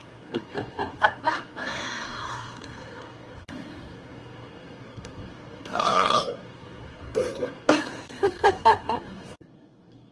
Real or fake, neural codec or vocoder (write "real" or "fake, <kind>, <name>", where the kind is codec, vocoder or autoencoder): fake, codec, SNAC